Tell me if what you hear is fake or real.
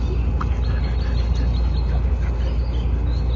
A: real